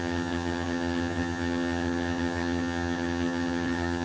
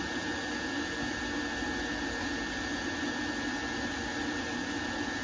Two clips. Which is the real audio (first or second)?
second